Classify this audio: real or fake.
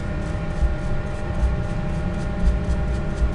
real